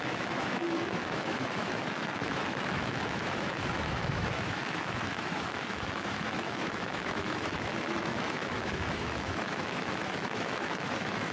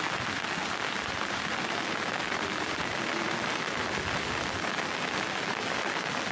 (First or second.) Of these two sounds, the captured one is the second